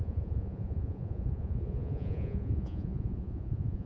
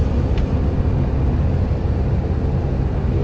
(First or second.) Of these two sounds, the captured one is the second